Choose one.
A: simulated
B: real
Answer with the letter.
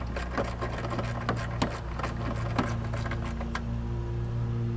B